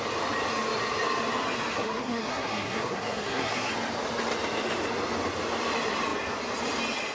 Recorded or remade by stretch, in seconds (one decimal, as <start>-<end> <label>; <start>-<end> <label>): 0.0-1.7 recorded; 1.7-3.7 remade; 3.7-7.1 recorded

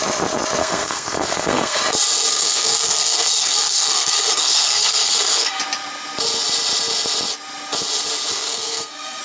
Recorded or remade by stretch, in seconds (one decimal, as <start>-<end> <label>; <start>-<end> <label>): 0.0-0.6 recorded; 0.6-1.8 remade; 1.8-2.3 recorded; 2.3-5.6 remade; 5.6-8.3 recorded; 8.3-9.2 remade

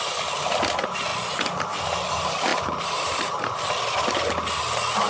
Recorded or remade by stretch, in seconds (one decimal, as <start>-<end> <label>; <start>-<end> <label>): 0.0-2.5 recorded; 2.5-3.6 remade; 3.6-5.1 recorded

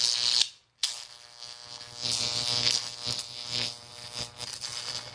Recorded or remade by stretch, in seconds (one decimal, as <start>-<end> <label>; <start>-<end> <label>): 0.0-5.1 recorded